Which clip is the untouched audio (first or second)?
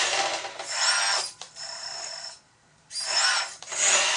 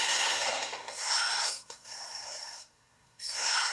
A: first